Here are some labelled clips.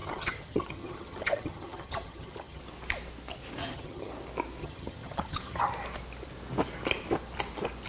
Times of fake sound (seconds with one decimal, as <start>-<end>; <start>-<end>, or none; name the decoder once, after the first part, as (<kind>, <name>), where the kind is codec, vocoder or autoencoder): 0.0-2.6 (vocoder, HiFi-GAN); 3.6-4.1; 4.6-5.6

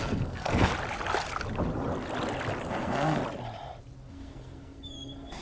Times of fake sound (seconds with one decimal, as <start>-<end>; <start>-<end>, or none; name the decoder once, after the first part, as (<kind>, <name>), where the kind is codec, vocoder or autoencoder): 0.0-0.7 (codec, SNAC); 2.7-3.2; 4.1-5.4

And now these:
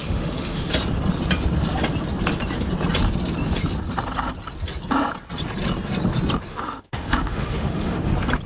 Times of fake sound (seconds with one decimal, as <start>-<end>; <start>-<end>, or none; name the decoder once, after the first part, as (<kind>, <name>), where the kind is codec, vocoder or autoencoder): 0.0-0.7 (autoencoder, DAC-VAE); 6.5-8.1